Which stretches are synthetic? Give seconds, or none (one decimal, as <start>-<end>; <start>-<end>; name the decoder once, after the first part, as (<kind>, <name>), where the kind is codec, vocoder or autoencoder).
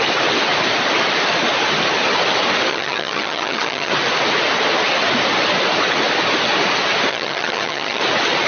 2.7-3.9 (vocoder, HiFi-GAN); 7.1-8.0